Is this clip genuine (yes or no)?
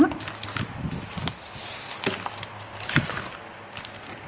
yes